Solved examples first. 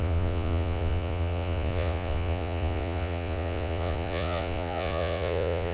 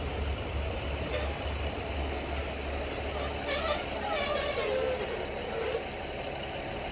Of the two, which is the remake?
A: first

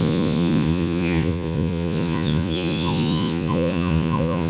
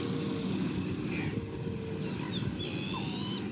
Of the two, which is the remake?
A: first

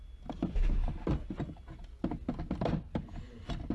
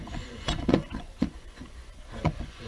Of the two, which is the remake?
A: second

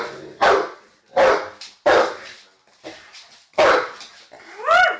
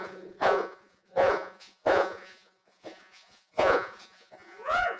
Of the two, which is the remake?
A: second